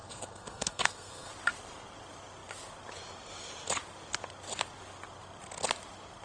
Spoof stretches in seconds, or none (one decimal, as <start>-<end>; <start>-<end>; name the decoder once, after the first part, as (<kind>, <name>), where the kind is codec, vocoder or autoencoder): 0.0-1.3 (codec, SNAC)